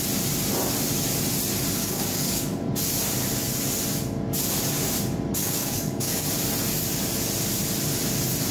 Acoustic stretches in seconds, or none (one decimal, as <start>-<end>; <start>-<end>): 0.0-1.8; 2.7-5.4; 6.3-8.5